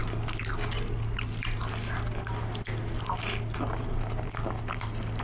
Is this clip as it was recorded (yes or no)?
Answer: yes